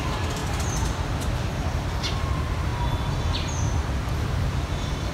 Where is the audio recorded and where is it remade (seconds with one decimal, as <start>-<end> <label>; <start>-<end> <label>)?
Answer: 0.0-0.4 remade; 0.4-1.5 recorded; 1.5-2.7 remade; 2.7-4.5 recorded; 4.5-5.1 remade